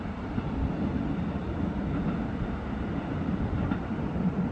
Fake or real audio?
real